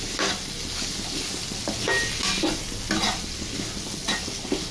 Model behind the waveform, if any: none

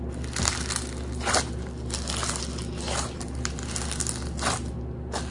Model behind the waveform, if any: none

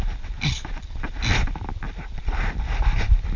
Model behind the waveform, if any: none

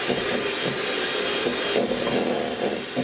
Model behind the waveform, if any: none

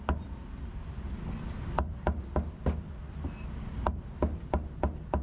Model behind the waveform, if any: none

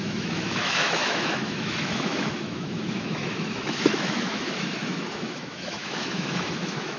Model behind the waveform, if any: autoencoder, DAC-VAE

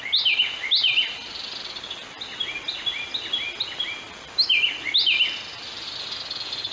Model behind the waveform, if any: none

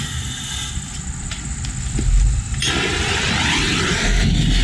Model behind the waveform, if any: none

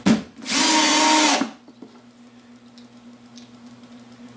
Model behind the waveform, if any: none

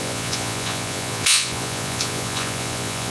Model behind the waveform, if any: vocoder, Vocos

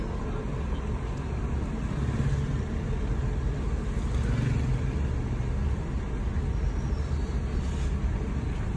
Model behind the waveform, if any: none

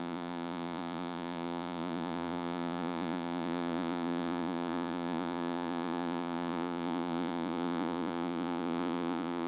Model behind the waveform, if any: vocoder, Vocos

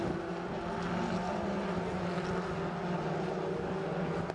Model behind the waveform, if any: none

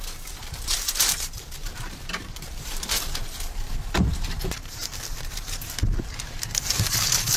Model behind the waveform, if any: vocoder, BigVGAN v2